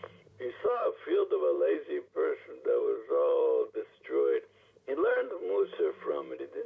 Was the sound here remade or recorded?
remade